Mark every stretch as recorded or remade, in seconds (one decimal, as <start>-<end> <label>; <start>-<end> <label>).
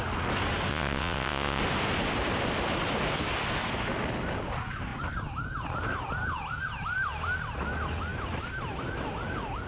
0.0-0.7 recorded; 0.7-1.6 remade; 1.6-9.7 recorded